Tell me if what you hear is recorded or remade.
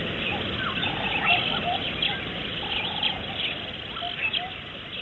recorded